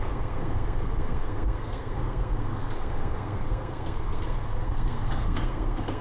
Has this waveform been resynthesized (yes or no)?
yes